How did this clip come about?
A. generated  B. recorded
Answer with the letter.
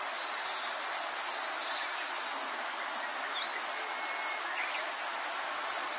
B